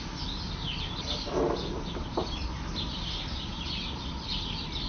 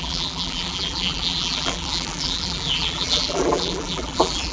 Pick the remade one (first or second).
second